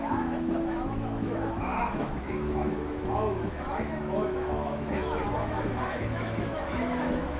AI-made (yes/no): yes